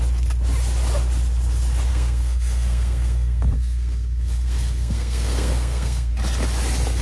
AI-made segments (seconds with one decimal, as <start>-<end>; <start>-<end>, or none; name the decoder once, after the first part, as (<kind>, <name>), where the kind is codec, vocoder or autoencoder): 1.9-6.1 (codec, SNAC)